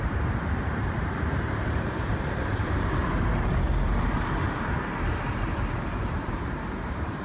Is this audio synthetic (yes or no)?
yes